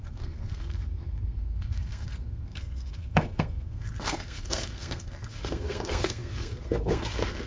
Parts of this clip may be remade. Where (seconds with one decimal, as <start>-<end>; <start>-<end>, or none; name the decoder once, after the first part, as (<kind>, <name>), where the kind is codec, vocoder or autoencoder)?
0.0-7.5 (codec, SNAC)